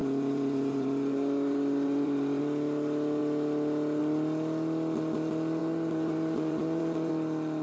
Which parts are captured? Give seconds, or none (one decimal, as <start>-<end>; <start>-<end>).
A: 2.4-5.6; 7.1-7.6